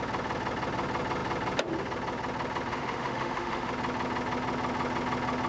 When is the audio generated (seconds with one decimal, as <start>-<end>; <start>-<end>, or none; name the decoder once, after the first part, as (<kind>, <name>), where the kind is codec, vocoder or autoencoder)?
2.7-3.7 (autoencoder, DAC-VAE)